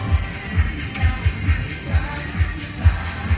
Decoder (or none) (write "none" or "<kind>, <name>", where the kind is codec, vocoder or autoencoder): none